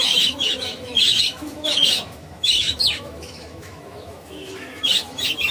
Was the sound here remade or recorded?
remade